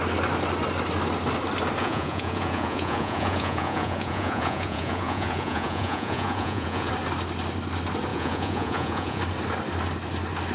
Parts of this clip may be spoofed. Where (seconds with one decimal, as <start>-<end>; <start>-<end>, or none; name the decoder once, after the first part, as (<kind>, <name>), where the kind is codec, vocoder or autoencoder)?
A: 1.8-6.9 (vocoder, Vocos); 8.1-9.2